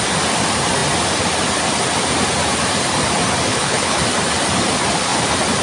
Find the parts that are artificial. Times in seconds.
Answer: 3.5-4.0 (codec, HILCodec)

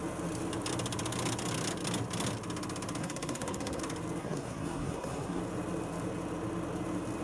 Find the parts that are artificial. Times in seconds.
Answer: 3.0-3.8 (codec, SNAC); 4.2-5.4

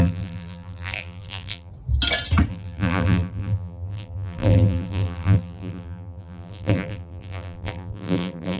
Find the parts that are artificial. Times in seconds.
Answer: 0.0-1.7 (vocoder, BigVGAN v2); 2.5-8.6